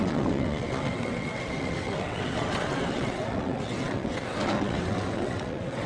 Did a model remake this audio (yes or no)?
yes